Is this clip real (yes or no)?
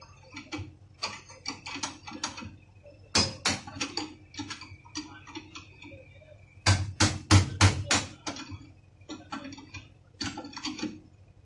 yes